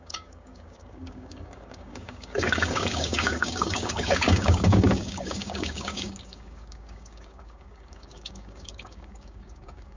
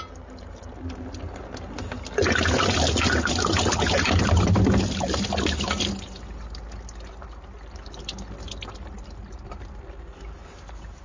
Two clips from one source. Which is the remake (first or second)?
first